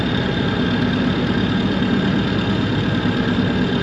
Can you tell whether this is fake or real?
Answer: real